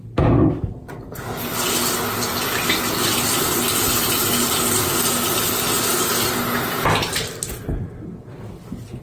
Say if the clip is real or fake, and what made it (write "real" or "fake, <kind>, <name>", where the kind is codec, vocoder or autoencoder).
real